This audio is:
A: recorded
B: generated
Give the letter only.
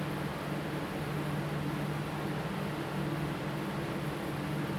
A